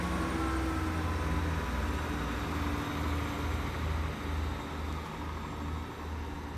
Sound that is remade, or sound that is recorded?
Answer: recorded